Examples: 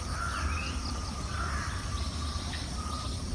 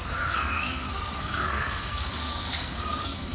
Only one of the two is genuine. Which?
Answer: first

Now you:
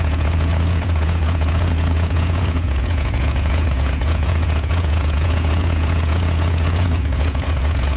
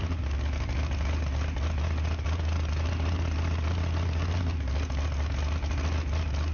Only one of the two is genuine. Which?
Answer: second